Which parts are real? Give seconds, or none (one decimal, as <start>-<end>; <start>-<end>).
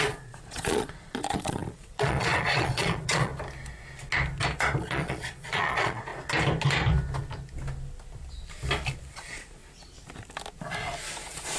3.3-4.8; 6.1-9.1; 9.6-11.1